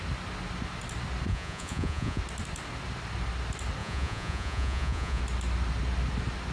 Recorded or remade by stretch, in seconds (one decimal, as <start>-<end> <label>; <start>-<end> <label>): 0.0-1.3 recorded; 1.3-2.2 remade; 2.2-3.8 recorded; 3.8-5.2 remade; 5.2-6.5 recorded